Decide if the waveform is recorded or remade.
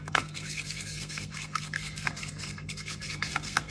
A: remade